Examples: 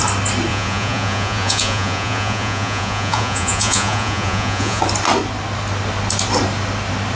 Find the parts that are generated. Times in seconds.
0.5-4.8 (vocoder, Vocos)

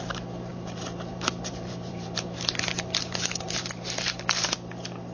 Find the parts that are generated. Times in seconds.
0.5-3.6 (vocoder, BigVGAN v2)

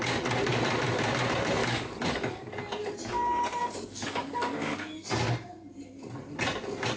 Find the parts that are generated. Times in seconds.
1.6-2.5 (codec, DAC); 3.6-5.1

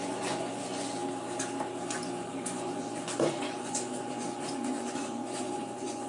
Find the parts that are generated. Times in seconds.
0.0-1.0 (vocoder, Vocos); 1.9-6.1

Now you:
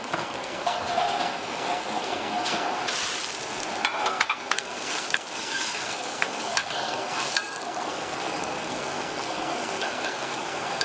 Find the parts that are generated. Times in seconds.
0.0-2.8 (codec, SNAC); 4.0-10.8

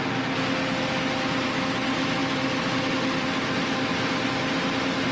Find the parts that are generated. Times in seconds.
none